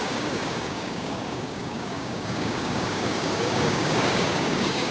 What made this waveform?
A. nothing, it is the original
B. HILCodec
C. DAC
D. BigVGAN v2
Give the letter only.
C